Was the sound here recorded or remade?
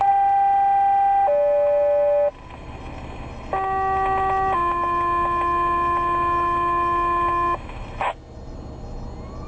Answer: recorded